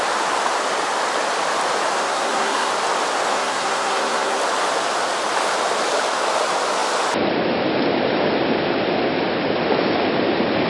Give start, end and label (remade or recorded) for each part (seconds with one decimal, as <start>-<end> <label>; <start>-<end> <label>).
0.0-2.0 recorded; 2.0-2.7 remade; 2.7-3.3 recorded; 3.3-4.4 remade; 4.4-10.7 recorded